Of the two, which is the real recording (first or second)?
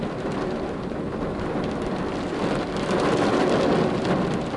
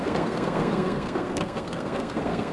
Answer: first